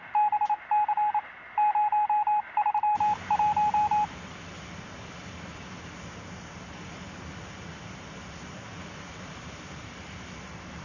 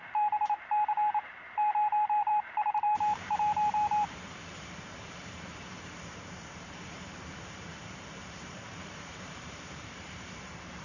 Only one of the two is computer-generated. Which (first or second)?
second